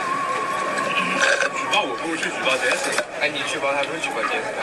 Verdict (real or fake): fake